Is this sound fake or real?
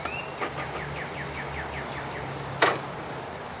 real